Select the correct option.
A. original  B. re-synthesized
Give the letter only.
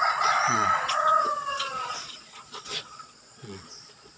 B